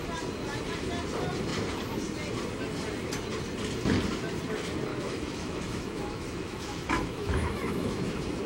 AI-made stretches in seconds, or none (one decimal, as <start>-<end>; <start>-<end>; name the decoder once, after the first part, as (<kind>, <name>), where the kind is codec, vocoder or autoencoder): 4.9-8.1 (autoencoder, DAC-VAE)